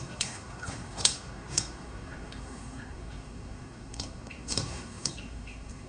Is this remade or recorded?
remade